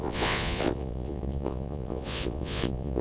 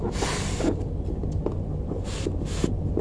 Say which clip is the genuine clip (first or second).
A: second